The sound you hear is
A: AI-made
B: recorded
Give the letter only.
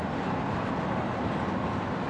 B